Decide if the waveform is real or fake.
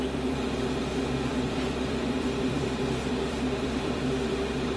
fake